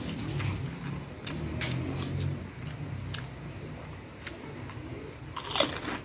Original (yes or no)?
yes